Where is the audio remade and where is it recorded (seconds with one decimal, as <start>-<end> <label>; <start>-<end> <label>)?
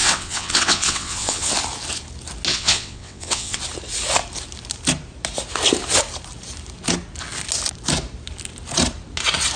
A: 0.0-1.5 remade; 1.5-2.5 recorded; 2.5-3.6 remade; 3.6-9.6 recorded